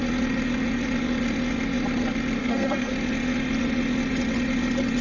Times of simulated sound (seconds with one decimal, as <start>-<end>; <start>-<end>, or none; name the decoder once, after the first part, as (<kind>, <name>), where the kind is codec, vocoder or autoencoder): 2.4-2.9 (codec, SNAC)